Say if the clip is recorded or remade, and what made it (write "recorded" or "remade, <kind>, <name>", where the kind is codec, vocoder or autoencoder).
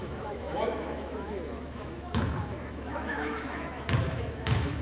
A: remade, autoencoder, DAC-VAE